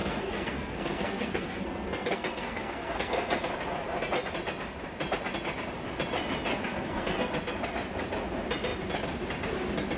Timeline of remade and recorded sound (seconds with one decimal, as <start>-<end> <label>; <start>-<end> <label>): 0.0-3.5 remade; 3.5-6.5 recorded; 6.5-7.3 remade; 7.3-10.0 recorded